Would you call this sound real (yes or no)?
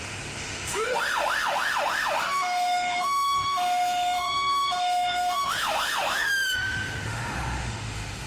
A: no